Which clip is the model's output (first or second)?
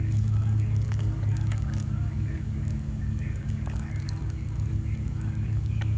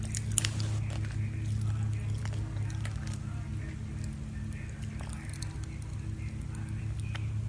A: first